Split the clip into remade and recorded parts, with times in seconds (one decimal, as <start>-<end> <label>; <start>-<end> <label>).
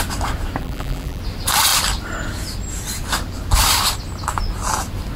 0.0-0.6 recorded; 0.6-1.2 remade; 1.2-5.2 recorded